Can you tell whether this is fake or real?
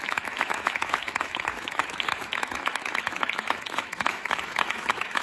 fake